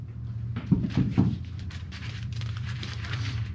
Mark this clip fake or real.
fake